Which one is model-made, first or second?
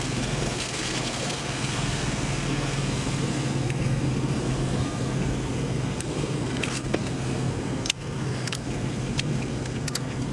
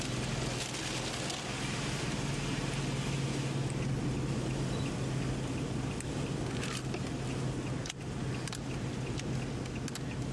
first